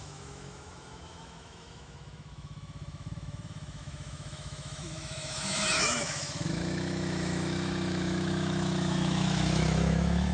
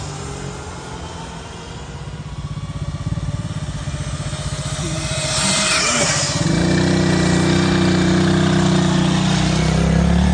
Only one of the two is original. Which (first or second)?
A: second